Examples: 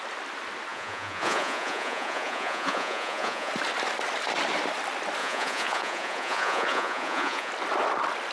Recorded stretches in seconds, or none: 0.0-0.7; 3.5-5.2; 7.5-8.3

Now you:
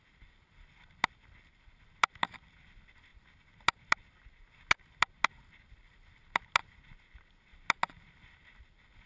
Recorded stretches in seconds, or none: 0.0-9.1

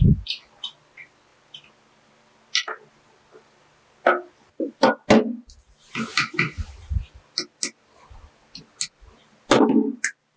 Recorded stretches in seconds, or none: 0.0-10.4

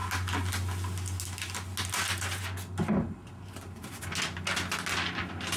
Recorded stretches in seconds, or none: 0.0-5.6

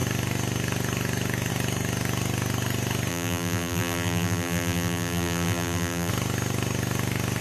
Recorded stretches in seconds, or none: 0.0-3.1; 6.1-7.4

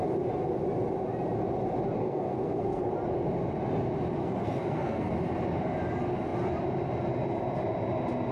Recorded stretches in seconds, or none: 0.0-2.0; 2.9-4.2; 5.1-8.3

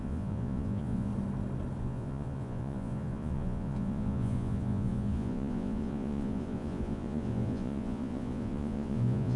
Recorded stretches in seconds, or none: 1.1-1.8

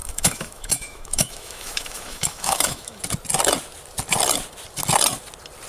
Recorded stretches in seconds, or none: 3.0-5.7